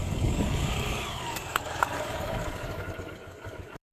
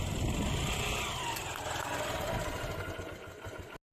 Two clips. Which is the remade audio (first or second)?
first